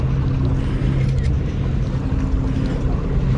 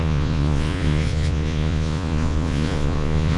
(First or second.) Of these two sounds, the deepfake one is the second